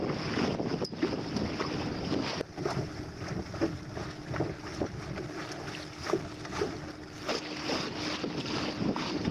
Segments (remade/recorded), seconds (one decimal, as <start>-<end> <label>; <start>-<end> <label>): 0.0-9.3 recorded